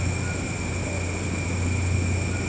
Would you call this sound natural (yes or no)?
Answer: yes